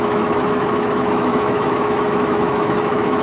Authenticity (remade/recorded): remade